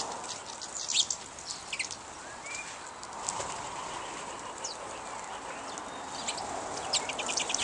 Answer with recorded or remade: recorded